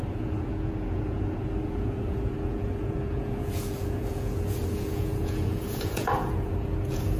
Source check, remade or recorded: remade